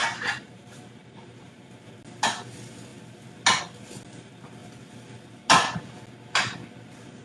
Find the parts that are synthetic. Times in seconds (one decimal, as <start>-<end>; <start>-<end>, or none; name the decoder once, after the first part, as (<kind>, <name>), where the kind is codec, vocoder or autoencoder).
0.0-1.9 (vocoder, BigVGAN v2)